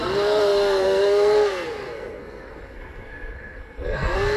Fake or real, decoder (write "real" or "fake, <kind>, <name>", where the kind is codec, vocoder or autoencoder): fake, codec, SNAC